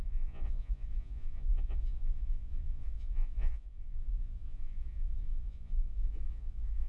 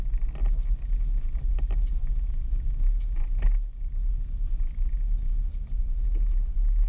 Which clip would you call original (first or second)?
second